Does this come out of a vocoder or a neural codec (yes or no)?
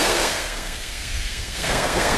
yes